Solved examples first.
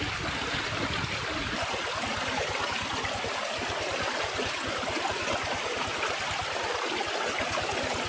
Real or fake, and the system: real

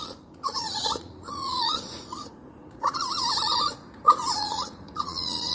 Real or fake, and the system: fake, vocoder, Vocos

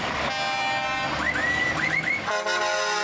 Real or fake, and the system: real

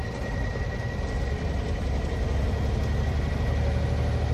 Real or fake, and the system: real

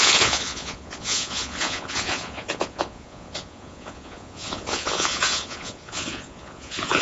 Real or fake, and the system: fake, vocoder, Vocos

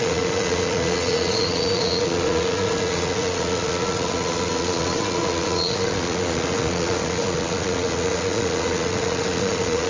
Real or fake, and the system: fake, vocoder, Vocos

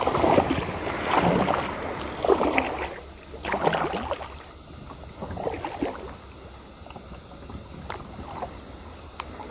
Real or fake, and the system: real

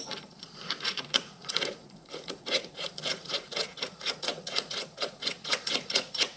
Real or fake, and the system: fake, vocoder, Vocos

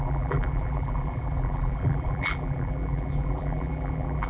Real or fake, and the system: fake, vocoder, BigVGAN v2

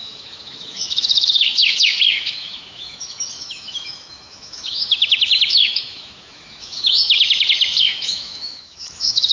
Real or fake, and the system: fake, autoencoder, DAC-VAE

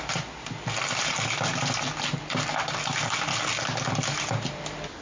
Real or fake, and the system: real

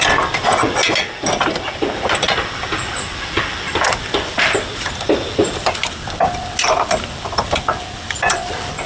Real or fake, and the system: real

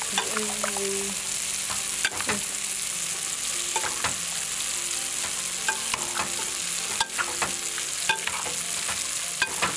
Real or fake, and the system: real